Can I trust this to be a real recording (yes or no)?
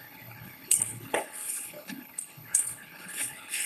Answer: no